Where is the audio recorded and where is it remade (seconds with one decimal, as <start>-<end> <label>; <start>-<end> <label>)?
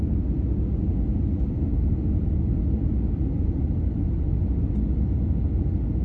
0.0-6.0 recorded